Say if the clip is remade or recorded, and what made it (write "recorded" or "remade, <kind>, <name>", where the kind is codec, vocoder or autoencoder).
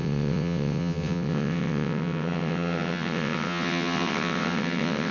remade, vocoder, WaveNeXt